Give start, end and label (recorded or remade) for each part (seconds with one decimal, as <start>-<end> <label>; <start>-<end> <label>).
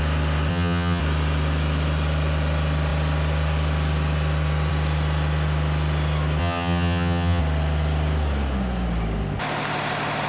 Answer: 0.0-0.5 recorded; 0.5-1.0 remade; 1.0-6.4 recorded; 6.4-7.4 remade; 7.4-10.3 recorded